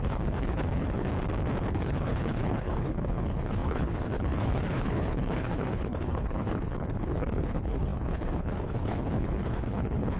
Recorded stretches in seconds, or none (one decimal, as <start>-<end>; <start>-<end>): 1.1-1.7

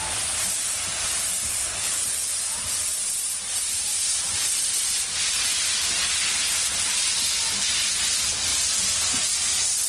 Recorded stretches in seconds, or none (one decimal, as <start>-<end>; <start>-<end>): 0.0-1.5; 2.3-9.9

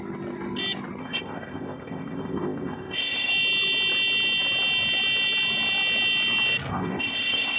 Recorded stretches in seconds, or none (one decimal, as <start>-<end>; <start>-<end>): 0.0-1.0; 3.3-6.7

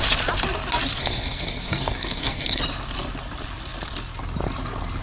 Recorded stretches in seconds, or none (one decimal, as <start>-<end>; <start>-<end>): 0.0-1.0; 2.6-5.0

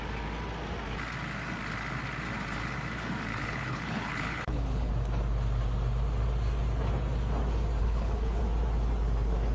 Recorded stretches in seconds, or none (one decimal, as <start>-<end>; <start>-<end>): 0.0-3.3; 4.9-7.8; 8.4-9.5